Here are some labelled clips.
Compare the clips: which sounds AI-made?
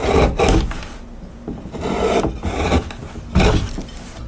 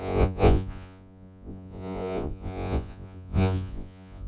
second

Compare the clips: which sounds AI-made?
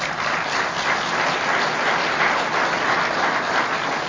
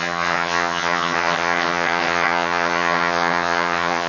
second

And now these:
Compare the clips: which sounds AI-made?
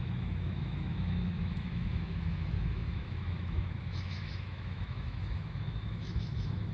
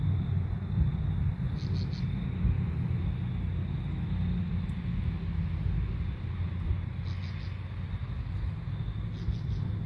first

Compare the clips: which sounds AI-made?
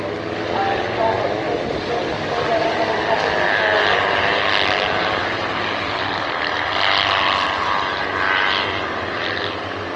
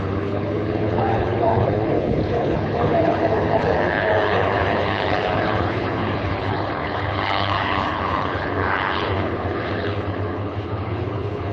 second